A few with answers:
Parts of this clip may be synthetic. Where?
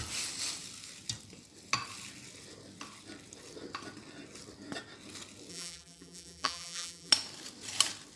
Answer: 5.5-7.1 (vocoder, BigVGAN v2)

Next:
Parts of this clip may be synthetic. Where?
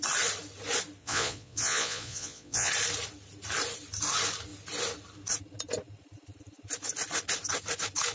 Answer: 1.0-2.7 (vocoder, Vocos)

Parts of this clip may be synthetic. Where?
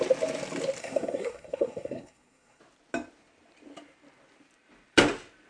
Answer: 0.8-2.6 (codec, SNAC)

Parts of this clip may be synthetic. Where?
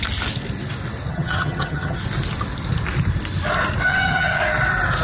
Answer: 1.1-2.0 (vocoder, HiFi-GAN); 3.9-4.4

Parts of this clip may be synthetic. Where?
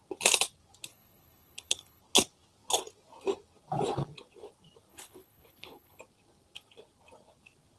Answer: 0.9-2.0 (codec, HILCodec); 4.9-6.0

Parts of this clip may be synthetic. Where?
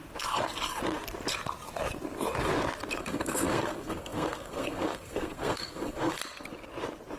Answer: 3.0-6.2 (codec, SNAC)